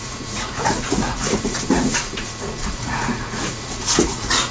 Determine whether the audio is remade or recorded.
remade